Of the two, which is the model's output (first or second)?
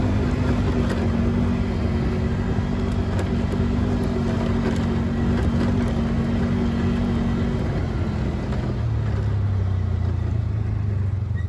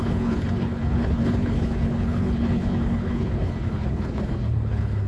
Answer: second